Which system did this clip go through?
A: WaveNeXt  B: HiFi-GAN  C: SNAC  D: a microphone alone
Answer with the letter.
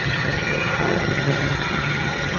B